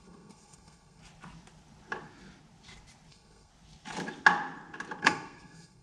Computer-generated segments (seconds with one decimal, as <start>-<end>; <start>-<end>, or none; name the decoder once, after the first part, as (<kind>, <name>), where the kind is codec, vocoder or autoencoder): 0.0-1.0 (codec, SNAC); 3.1-3.5; 5.0-5.8